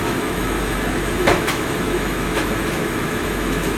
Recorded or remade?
remade